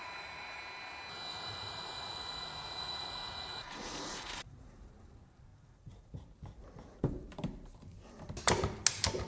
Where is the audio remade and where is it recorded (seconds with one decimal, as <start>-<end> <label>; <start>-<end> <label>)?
0.0-0.6 remade; 0.6-1.3 recorded; 1.3-4.9 remade; 4.9-5.5 recorded; 5.5-6.1 remade; 6.1-9.3 recorded